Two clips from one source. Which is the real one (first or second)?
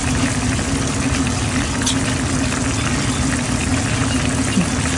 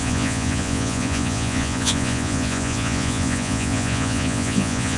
first